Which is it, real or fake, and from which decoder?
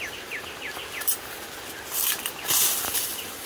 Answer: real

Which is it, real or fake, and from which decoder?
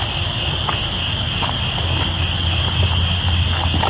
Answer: real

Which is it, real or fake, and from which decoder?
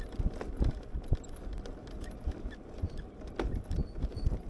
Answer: real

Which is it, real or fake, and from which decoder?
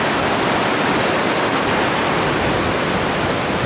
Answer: real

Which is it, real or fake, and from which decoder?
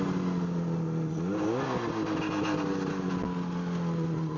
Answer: real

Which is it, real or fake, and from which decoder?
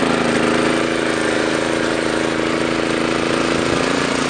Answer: real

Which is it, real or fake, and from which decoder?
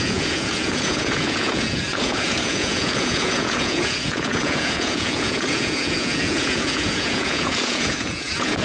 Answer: fake, vocoder, Vocos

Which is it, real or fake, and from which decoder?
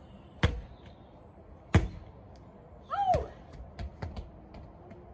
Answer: real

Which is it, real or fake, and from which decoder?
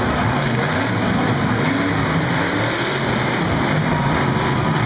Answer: real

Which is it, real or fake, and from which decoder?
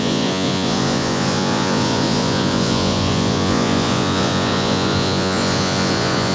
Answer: fake, vocoder, Vocos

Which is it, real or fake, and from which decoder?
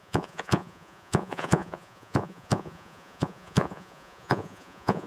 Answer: fake, vocoder, Vocos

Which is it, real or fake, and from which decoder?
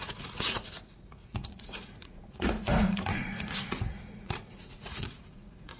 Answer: fake, vocoder, Vocos